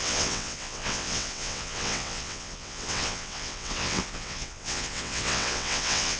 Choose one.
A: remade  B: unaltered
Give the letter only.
A